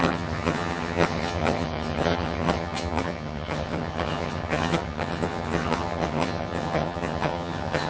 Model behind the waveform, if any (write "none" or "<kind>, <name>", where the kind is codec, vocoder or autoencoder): vocoder, HiFi-GAN